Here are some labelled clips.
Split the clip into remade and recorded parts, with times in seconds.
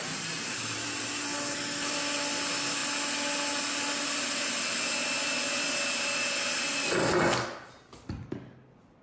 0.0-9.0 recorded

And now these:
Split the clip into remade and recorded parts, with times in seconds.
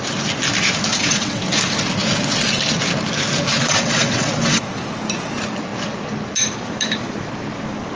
0.0-0.9 recorded; 0.9-1.4 remade; 1.4-3.6 recorded; 3.6-4.6 remade; 4.6-8.0 recorded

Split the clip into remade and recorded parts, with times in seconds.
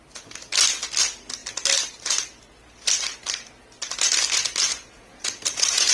0.0-4.7 recorded; 4.7-5.9 remade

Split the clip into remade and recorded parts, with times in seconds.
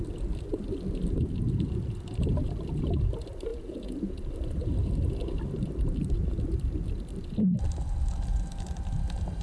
0.0-3.5 recorded; 3.5-4.3 remade; 4.3-9.4 recorded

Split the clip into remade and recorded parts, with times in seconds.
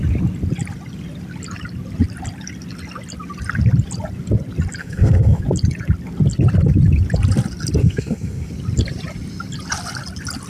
0.0-4.8 recorded; 4.8-5.4 remade; 5.4-7.8 recorded; 7.8-8.5 remade; 8.5-10.5 recorded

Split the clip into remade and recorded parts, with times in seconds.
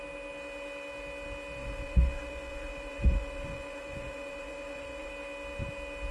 0.0-1.6 recorded; 1.6-5.1 remade; 5.1-6.1 recorded